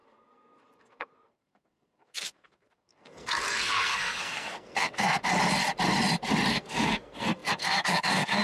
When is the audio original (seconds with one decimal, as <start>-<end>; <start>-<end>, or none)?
5.2-6.5